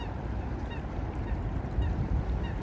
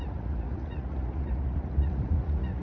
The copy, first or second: second